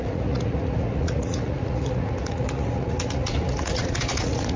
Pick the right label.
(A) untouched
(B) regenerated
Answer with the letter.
B